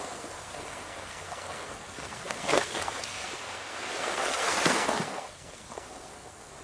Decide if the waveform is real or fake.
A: fake